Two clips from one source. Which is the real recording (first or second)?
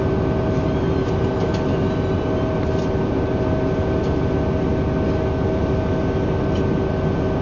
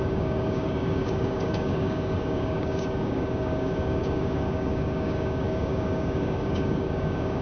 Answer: first